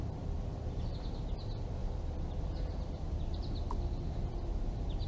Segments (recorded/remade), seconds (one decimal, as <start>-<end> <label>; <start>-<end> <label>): 0.0-5.1 recorded